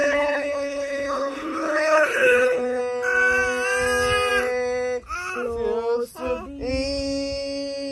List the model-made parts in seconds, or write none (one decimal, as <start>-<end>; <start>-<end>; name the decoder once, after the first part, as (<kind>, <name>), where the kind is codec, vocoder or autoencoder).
0.0-2.8 (codec, HILCodec)